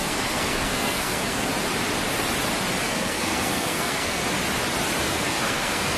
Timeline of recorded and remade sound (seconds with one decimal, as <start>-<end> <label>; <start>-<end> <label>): 0.0-1.5 remade; 1.5-2.8 recorded; 2.8-4.2 remade; 4.2-5.0 recorded; 5.0-6.0 remade